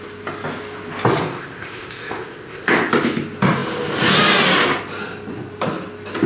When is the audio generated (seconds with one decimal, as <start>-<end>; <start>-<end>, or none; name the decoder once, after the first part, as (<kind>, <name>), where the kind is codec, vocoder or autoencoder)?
1.2-2.9 (codec, ZipCodec)